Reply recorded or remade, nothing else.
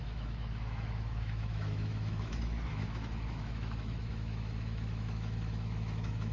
remade